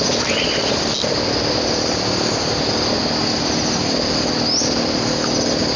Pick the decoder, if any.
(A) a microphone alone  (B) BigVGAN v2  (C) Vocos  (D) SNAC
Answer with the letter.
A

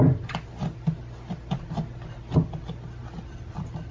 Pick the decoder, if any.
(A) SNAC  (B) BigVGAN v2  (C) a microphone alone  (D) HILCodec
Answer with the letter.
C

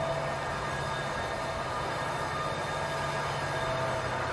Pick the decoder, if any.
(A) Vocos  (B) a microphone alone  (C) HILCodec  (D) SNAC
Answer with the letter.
B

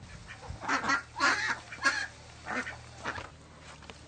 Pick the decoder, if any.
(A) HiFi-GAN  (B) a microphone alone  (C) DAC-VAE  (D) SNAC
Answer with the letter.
B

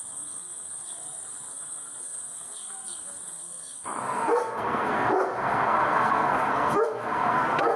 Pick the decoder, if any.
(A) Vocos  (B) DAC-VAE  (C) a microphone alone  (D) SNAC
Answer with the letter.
D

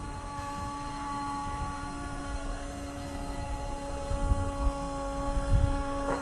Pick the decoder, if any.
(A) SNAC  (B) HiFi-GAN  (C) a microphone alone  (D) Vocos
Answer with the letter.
A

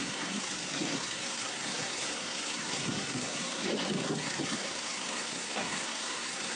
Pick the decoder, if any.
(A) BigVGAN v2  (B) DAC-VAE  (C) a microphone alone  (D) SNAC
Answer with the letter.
D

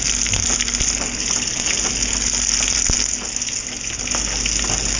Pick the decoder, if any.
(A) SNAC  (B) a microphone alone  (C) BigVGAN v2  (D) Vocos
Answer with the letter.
B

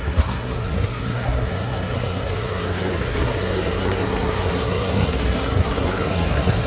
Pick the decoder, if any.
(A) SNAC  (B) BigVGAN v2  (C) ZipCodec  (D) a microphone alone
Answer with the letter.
A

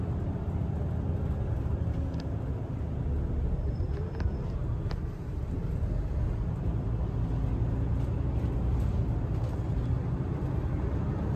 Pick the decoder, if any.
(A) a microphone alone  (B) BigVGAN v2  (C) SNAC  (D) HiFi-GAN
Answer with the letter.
A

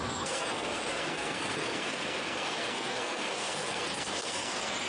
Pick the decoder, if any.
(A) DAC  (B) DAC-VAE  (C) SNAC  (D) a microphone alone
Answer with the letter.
C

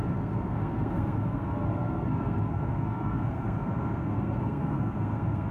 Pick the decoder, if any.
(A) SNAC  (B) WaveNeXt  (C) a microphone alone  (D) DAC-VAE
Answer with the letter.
A